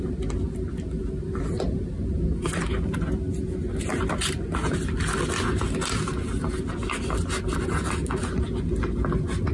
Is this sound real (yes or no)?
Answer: yes